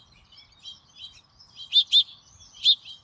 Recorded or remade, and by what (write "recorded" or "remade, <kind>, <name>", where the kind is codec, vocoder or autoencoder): recorded